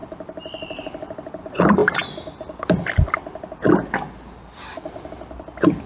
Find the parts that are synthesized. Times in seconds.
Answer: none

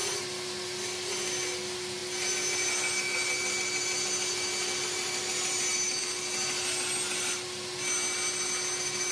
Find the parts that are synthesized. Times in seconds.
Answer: none

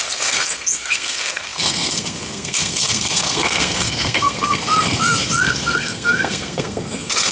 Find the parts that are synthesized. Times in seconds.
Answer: 0.0-7.3